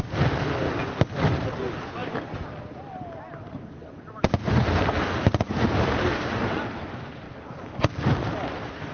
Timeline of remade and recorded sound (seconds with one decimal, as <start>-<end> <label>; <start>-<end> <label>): 0.0-0.8 recorded; 0.8-1.6 remade; 1.6-3.8 recorded; 3.8-6.6 remade; 6.6-8.9 recorded